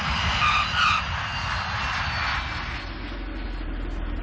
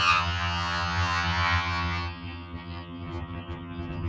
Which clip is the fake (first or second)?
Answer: second